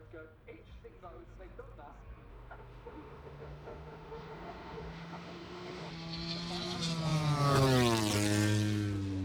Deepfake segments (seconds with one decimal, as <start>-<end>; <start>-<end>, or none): 2.3-5.9